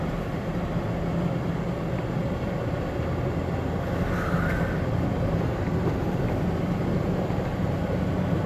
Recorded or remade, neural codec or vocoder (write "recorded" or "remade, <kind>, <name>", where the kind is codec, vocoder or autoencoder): recorded